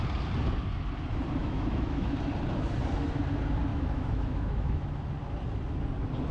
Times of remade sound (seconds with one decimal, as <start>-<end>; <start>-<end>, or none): 1.4-2.2; 3.7-5.1

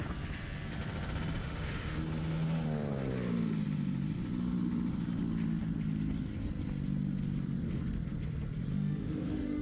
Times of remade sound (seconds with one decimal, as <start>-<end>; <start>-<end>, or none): 1.4-2.0; 8.7-9.6

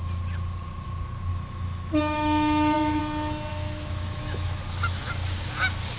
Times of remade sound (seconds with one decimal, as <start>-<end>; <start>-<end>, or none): 1.3-3.0; 3.5-4.6

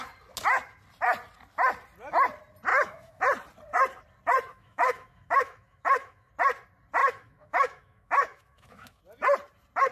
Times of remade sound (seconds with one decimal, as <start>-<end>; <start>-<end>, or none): 2.7-3.2; 4.5-6.3; 7.0-9.0